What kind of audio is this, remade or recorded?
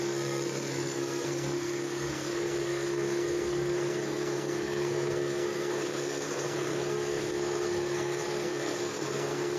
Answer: remade